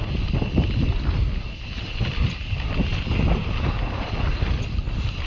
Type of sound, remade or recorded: recorded